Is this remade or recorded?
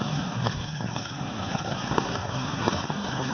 remade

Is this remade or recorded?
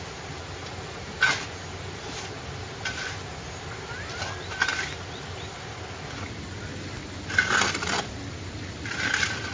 recorded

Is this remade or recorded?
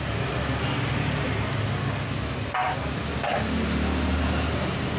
recorded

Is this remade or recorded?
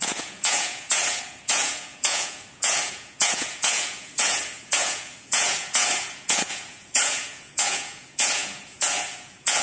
remade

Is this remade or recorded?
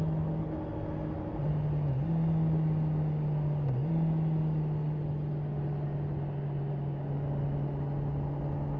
recorded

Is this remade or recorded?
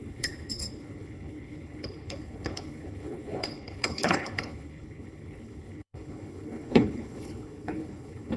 remade